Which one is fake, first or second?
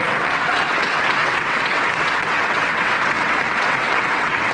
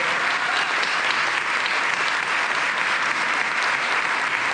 first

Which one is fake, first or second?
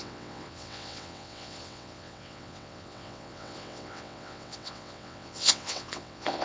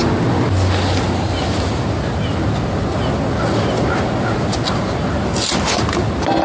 first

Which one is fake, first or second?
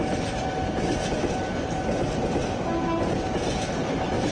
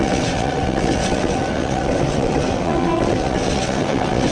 second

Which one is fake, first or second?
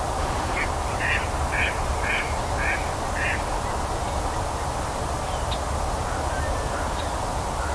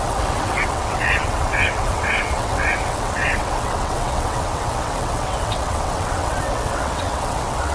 second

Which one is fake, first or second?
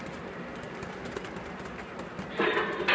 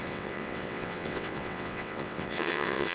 second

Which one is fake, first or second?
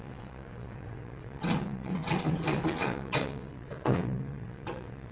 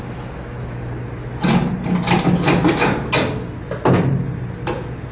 first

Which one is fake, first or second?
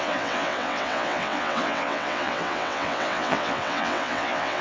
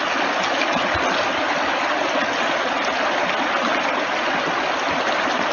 first